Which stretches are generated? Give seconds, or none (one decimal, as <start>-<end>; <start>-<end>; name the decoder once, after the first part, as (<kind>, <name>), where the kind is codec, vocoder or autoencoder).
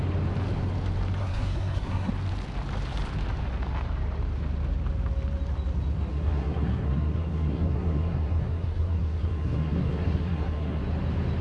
1.2-2.1 (codec, SNAC); 6.1-10.8